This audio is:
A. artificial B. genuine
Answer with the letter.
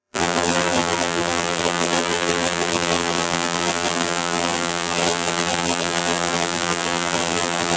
A